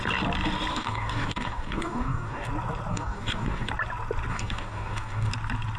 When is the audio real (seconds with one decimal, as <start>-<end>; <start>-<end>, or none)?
0.0-0.7; 2.5-2.9; 3.7-4.3; 5.3-5.8